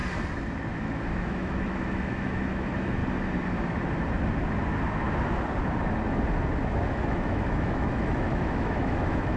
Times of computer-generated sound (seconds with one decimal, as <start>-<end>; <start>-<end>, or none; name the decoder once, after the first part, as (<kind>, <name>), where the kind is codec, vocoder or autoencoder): 0.8-3.0 (autoencoder, DAC-VAE); 6.9-9.4